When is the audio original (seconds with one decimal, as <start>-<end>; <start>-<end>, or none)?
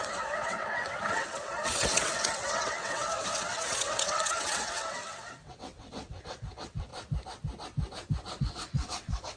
6.9-8.4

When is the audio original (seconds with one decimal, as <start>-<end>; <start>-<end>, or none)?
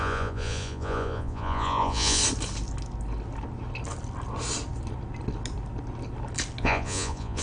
2.2-6.6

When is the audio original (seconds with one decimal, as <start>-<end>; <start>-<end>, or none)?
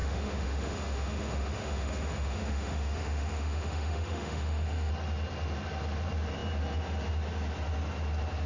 4.9-8.5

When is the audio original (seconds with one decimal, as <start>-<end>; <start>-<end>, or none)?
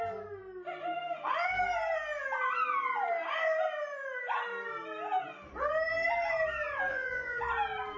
0.0-6.9; 7.4-8.0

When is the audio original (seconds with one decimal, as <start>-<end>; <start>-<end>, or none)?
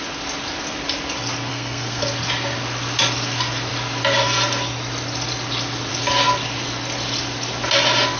0.0-1.5; 2.0-8.2